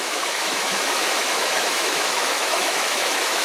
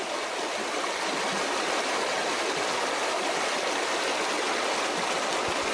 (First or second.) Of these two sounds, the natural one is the second